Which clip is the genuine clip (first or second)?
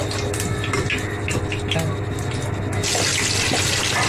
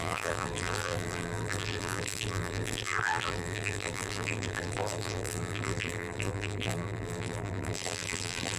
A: first